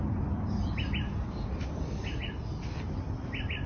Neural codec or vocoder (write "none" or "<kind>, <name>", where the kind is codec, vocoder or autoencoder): none